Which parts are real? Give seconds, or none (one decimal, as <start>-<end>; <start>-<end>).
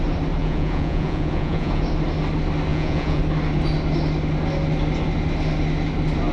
0.0-0.4; 1.8-2.7; 3.2-6.3